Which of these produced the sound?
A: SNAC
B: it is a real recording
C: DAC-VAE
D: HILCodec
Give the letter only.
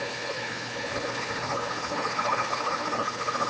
D